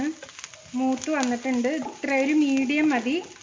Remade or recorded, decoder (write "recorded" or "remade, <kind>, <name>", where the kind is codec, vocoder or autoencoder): recorded